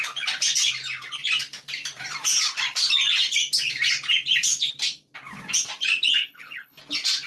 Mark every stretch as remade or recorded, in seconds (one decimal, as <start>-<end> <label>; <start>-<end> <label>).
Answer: 0.0-6.2 recorded; 6.2-6.8 remade; 6.8-7.3 recorded